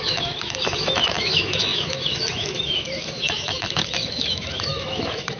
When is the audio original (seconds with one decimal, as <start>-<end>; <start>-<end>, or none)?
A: none